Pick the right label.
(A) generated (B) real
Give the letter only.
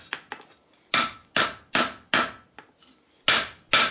B